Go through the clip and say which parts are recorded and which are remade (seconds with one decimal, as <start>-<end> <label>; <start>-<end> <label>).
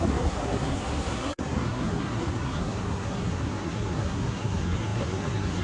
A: 0.0-5.6 remade